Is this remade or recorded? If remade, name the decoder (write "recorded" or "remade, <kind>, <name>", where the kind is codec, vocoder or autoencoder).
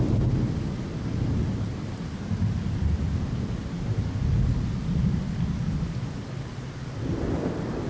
recorded